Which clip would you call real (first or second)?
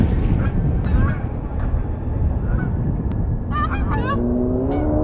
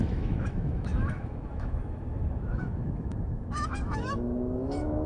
first